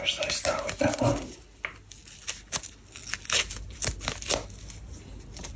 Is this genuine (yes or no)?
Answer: yes